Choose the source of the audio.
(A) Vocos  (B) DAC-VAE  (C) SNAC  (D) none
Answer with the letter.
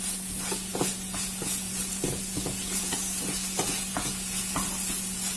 A